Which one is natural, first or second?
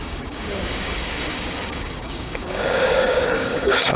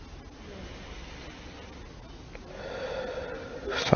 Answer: second